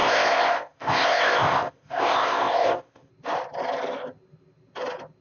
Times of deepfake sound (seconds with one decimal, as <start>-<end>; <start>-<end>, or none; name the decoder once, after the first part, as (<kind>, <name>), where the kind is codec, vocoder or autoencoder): 0.0-3.1 (codec, ZipCodec)